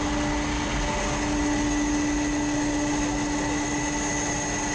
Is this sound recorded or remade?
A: recorded